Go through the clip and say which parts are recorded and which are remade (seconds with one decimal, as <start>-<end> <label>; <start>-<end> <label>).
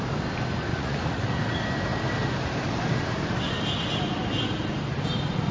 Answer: 0.0-0.7 recorded; 0.7-1.4 remade; 1.4-5.5 recorded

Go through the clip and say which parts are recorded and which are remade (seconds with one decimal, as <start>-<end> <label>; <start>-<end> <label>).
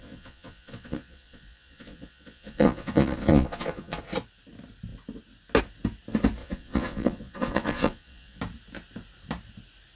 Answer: 0.0-4.0 remade; 4.0-6.4 recorded; 6.4-8.4 remade; 8.4-9.9 recorded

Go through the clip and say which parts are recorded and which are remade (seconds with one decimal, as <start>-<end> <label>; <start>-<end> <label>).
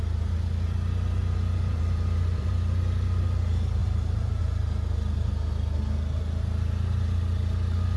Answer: 0.0-1.7 recorded; 1.7-2.5 remade; 2.5-3.8 recorded; 3.8-4.4 remade; 4.4-8.0 recorded